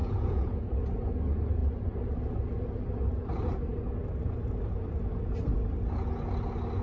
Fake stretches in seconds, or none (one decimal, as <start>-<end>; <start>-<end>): 0.0-0.8

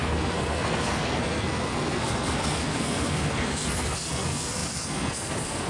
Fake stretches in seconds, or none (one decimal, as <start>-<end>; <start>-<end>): 0.0-5.7

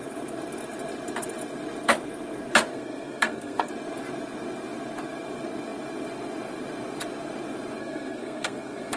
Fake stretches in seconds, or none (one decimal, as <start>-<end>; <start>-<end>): 2.7-3.7; 7.8-9.0